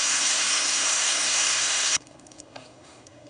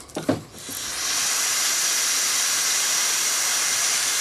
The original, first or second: second